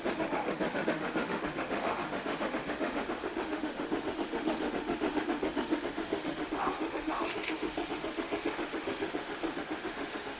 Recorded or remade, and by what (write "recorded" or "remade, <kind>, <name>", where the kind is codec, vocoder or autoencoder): remade, autoencoder, DAC-VAE